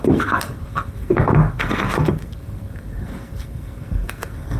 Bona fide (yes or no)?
no